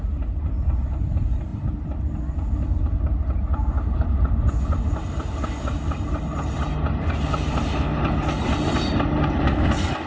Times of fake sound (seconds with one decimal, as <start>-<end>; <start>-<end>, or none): none

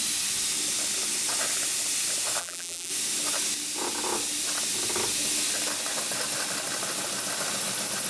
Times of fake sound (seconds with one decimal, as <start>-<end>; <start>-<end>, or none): 2.4-2.9